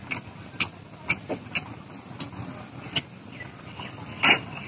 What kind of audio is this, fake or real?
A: real